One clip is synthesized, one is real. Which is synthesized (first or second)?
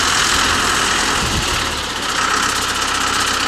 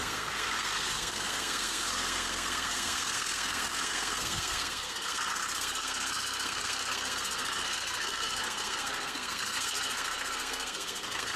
second